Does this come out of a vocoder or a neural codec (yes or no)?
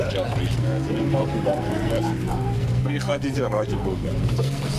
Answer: yes